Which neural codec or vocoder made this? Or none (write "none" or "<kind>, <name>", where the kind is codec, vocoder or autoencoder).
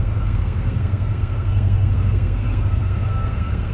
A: codec, SNAC